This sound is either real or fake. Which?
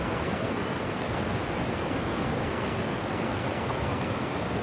fake